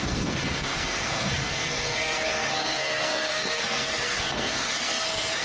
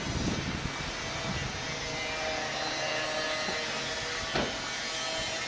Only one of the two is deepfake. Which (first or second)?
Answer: first